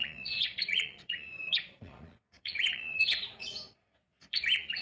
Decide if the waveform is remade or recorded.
remade